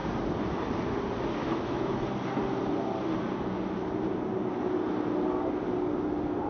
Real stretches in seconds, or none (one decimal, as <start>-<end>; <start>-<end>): 0.0-1.4; 2.0-6.5